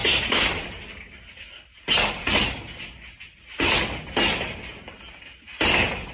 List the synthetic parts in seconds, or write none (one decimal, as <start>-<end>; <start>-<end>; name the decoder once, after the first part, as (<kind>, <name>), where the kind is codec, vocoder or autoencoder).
0.0-0.9 (vocoder, BigVGAN v2)